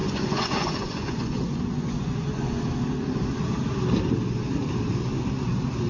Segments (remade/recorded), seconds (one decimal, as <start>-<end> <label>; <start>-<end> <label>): 0.0-2.6 remade; 2.6-5.9 recorded